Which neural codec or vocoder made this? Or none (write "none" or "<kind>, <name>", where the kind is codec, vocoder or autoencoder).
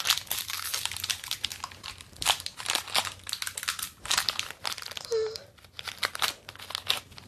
none